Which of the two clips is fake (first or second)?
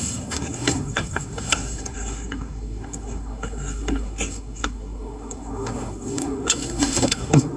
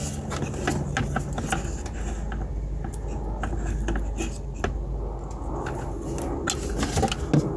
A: first